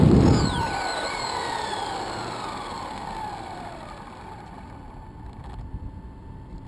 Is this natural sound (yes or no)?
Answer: yes